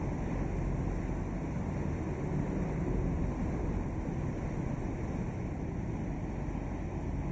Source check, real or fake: real